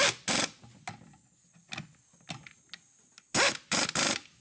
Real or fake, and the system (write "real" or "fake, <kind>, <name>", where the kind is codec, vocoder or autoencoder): real